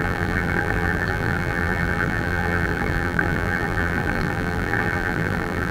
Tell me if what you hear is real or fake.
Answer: fake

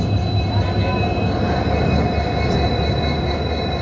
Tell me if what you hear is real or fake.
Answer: real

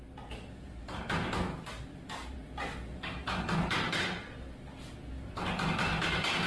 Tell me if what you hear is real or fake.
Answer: real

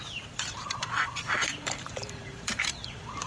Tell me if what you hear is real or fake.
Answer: fake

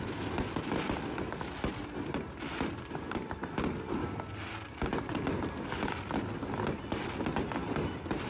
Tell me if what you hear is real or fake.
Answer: real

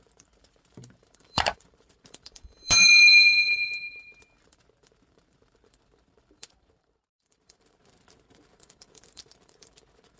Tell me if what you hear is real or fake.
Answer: fake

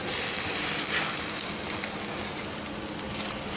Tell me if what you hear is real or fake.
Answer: real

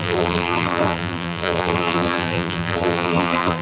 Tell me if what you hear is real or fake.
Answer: fake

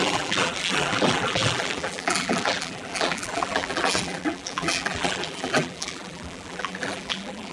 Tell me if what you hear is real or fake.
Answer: fake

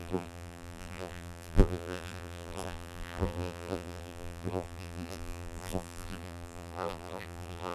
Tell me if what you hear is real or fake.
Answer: fake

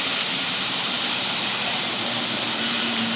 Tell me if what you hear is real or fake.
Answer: fake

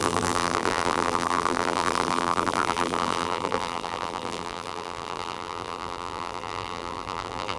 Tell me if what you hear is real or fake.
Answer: fake